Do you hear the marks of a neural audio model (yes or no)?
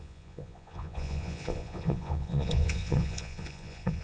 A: yes